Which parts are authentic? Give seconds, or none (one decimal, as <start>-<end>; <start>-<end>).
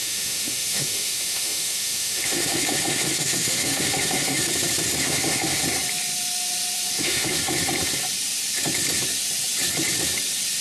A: 4.4-5.0; 5.6-7.0; 7.4-10.6